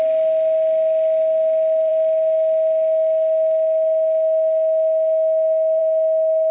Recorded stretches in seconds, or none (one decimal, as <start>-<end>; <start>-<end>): 0.0-6.5